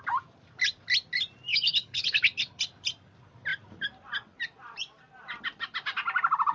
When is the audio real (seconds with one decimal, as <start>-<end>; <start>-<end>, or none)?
0.0-1.5; 2.6-6.5